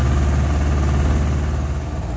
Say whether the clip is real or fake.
real